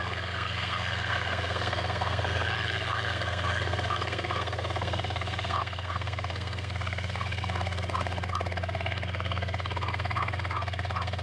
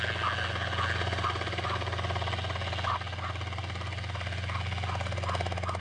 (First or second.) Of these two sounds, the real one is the second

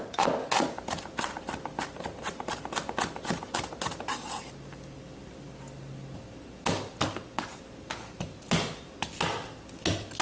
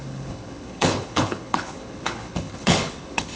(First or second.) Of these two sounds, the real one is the first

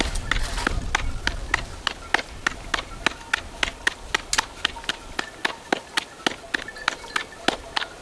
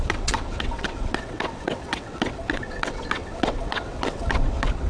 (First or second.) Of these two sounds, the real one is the first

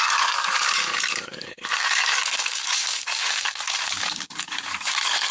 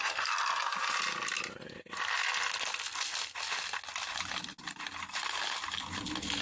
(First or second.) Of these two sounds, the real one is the second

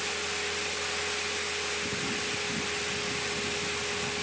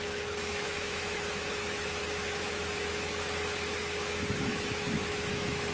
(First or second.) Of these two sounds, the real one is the first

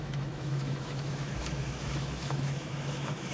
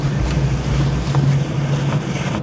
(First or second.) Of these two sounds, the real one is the second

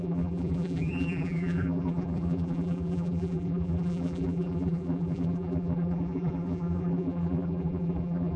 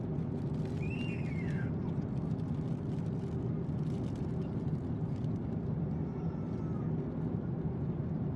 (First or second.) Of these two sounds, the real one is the second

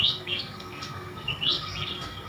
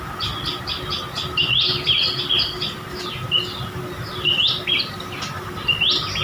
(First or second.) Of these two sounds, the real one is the second